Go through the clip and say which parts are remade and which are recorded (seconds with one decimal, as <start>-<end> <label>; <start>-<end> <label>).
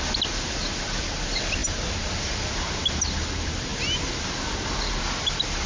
0.0-5.7 recorded